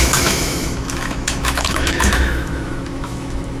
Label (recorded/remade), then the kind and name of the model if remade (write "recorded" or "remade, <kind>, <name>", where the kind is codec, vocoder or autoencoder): remade, autoencoder, DAC-VAE